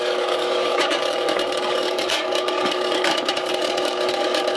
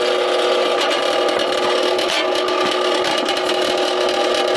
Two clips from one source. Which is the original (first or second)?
second